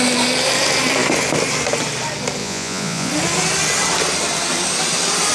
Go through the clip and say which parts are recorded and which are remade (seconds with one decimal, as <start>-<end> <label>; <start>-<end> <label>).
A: 0.0-2.4 recorded; 2.4-3.1 remade; 3.1-5.3 recorded